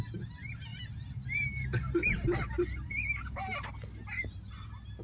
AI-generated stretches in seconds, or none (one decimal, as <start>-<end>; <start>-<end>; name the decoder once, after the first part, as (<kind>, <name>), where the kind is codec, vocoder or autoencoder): 0.7-3.7 (vocoder, BigVGAN v2)